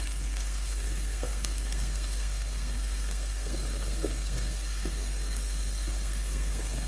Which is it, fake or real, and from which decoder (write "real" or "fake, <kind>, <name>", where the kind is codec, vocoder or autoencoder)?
fake, codec, SNAC